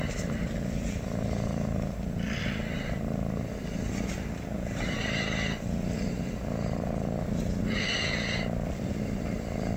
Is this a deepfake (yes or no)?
no